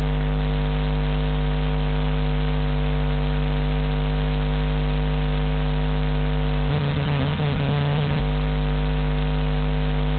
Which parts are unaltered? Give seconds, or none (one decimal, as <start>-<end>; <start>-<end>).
0.0-6.7; 8.2-10.2